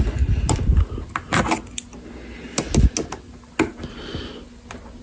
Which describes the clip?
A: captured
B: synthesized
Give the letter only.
A